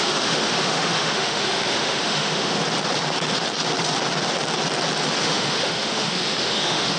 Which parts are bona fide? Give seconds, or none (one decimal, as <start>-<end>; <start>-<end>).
2.6-5.2